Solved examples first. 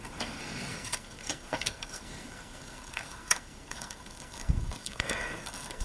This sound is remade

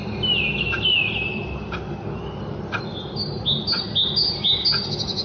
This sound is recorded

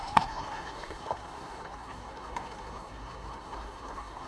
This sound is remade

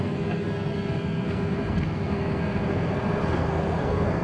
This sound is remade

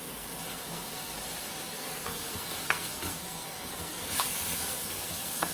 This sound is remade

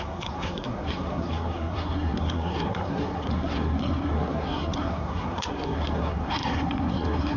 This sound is remade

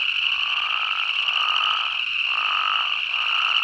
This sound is recorded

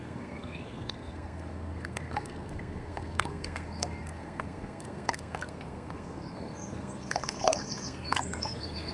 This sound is remade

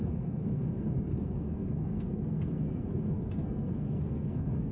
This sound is remade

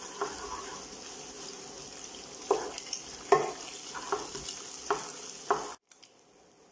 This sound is recorded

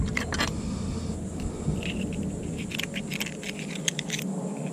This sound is recorded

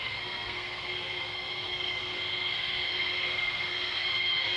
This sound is remade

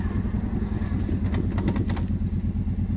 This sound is recorded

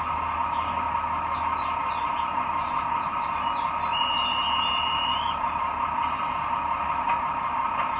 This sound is recorded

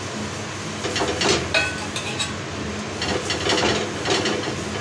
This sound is recorded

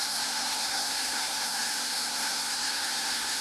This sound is remade